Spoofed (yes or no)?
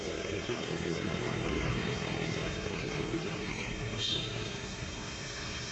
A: yes